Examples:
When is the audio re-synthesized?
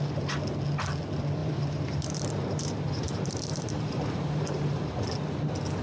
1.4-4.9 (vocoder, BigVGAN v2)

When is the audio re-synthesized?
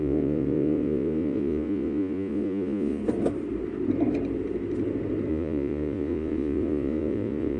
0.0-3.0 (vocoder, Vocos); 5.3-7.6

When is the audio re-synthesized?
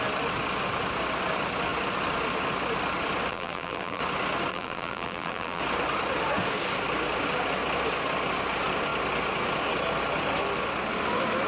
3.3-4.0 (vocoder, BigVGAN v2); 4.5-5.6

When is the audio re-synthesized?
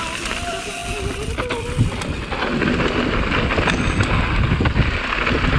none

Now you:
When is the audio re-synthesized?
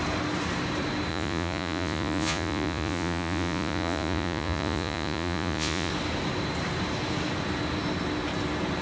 1.1-5.9 (vocoder, Vocos)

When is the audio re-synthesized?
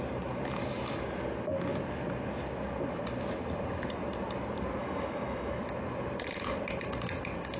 4.8-5.6 (autoencoder, DAC-VAE)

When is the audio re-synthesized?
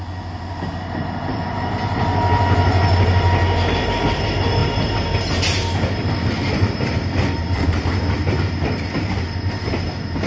6.4-8.0 (vocoder, BigVGAN v2)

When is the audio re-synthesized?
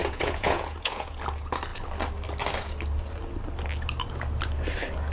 0.0-1.2 (vocoder, Vocos)